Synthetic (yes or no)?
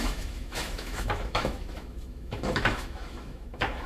yes